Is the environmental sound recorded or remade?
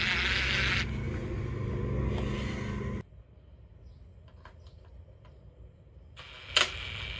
recorded